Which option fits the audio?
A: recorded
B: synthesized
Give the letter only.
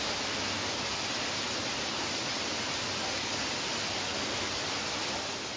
A